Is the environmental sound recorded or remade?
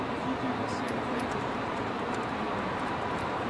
remade